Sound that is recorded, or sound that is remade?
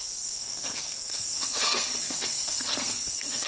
remade